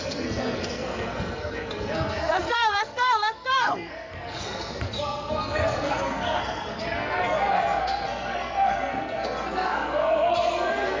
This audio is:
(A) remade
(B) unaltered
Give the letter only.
A